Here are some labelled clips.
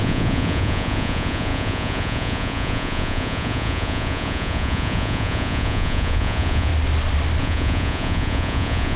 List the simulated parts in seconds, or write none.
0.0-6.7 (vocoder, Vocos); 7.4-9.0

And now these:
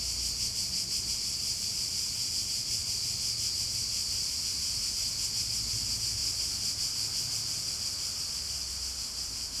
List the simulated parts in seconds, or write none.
none

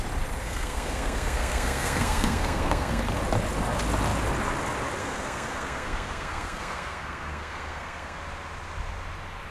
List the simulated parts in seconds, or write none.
0.4-3.0 (codec, SNAC); 5.0-8.2

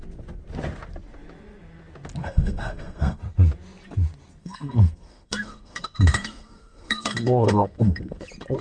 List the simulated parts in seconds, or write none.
2.2-3.2 (codec, SNAC); 4.4-8.2

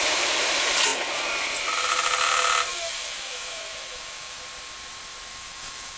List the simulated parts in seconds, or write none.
2.7-4.4 (autoencoder, DAC-VAE); 5.3-6.0

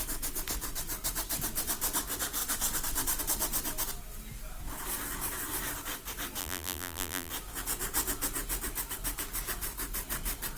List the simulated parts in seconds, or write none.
6.4-7.3 (vocoder, BigVGAN v2)

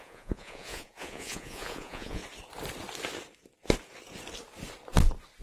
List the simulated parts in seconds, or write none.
0.0-2.2 (vocoder, Vocos)